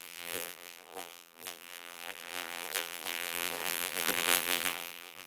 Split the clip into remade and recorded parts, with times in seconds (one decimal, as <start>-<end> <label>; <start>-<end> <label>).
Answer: 0.0-5.3 remade